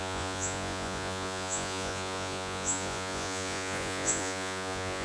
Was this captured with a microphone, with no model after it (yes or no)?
no